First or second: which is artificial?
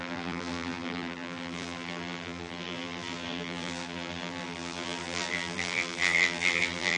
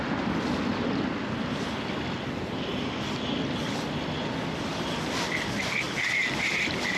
first